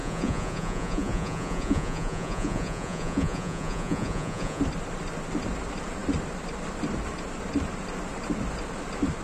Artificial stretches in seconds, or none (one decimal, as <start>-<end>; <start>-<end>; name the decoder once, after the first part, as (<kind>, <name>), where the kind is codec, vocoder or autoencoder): 0.0-4.6 (vocoder, Vocos)